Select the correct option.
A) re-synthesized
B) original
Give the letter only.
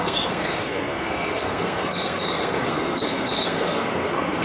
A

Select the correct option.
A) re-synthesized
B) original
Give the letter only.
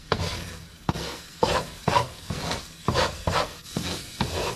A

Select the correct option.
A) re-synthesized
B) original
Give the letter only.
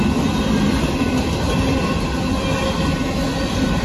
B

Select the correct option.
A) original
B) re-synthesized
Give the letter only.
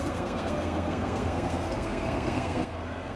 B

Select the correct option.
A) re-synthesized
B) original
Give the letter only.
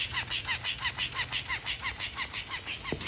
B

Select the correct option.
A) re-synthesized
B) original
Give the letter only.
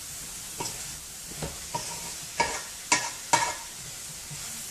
B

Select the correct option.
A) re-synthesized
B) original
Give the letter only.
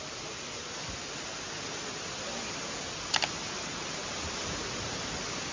B